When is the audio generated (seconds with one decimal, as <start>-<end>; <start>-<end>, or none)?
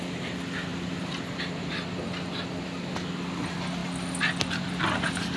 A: none